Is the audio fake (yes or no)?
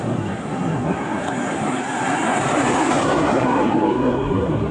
yes